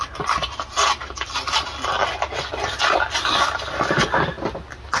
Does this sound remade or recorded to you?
recorded